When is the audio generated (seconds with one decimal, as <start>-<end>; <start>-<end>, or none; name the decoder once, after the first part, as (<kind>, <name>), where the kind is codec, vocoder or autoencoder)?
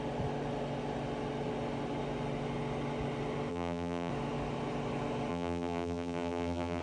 3.5-4.1 (vocoder, BigVGAN v2); 5.3-6.8